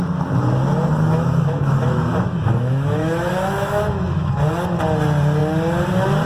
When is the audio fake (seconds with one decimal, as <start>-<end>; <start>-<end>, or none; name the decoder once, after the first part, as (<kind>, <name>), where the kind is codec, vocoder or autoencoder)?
1.1-4.3 (autoencoder, DAC-VAE)